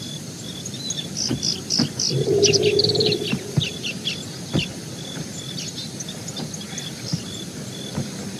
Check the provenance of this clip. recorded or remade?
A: remade